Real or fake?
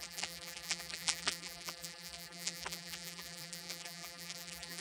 fake